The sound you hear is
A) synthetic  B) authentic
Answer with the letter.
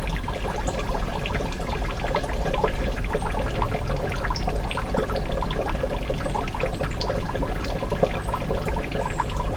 B